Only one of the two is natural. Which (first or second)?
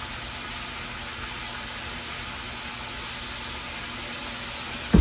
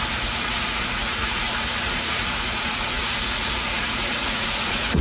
first